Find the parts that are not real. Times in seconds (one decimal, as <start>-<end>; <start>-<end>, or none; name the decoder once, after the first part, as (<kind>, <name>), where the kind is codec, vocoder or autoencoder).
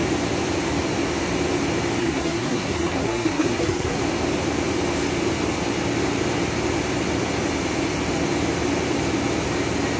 2.0-4.0 (codec, SNAC)